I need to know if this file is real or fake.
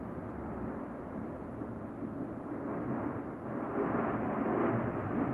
real